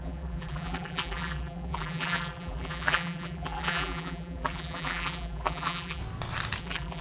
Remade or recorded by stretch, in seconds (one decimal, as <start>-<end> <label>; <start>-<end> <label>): 0.0-6.0 remade; 6.0-6.6 recorded; 6.6-7.0 remade